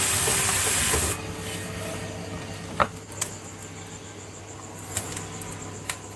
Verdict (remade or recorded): recorded